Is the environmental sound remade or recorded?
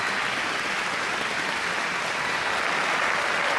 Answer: recorded